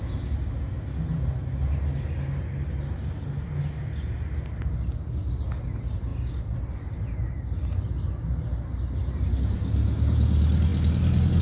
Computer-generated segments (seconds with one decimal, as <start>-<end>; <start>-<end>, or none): none